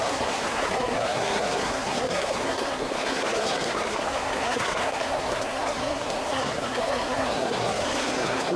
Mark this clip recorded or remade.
remade